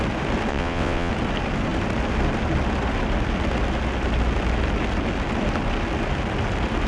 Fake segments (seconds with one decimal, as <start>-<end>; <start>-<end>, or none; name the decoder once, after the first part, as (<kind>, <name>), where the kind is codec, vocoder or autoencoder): 0.5-1.1 (vocoder, WaveNeXt)